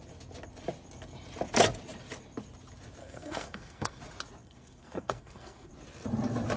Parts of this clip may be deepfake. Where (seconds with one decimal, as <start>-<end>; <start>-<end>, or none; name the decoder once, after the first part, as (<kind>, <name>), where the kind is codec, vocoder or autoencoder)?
3.0-4.0 (codec, SNAC); 4.4-5.7